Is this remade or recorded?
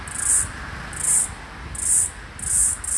recorded